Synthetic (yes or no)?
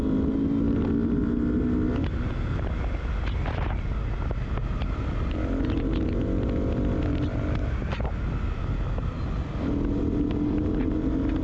no